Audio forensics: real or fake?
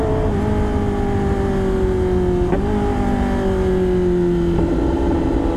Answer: real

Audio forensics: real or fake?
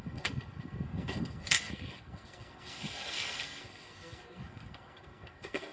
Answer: fake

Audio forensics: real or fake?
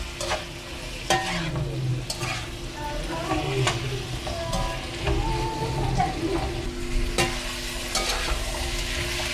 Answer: real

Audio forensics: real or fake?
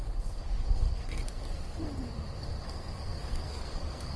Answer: fake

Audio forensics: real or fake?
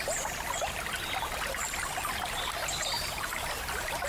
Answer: real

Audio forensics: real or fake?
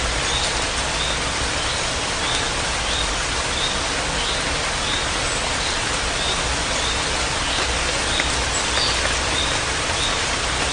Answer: real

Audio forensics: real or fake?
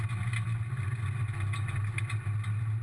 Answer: real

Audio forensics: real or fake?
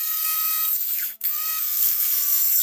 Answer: fake